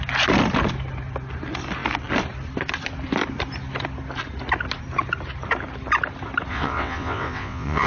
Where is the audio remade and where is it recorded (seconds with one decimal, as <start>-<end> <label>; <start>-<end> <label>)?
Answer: 0.0-6.5 recorded; 6.5-7.9 remade